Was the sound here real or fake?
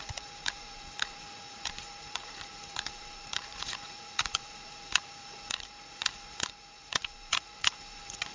fake